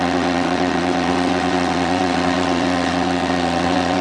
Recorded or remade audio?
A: remade